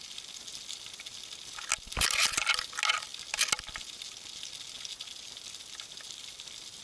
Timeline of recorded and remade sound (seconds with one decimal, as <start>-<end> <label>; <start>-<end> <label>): 0.0-6.8 recorded